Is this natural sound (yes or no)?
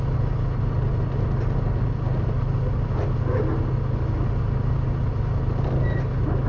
yes